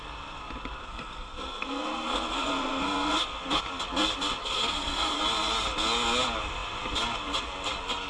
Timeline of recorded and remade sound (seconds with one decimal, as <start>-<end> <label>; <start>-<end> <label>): 0.0-0.8 recorded; 0.8-3.6 remade; 3.6-4.4 recorded; 4.4-5.2 remade; 5.2-8.1 recorded